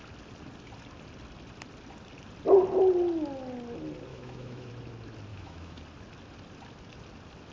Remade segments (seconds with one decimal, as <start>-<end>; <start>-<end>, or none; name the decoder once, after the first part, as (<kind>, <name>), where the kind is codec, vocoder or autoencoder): 4.1-4.7 (autoencoder, DAC-VAE); 5.3-5.8